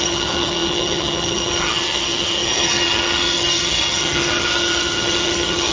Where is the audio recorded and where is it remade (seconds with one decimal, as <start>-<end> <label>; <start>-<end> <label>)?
0.0-5.7 remade